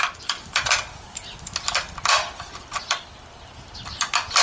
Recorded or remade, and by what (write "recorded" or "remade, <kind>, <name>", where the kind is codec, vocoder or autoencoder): recorded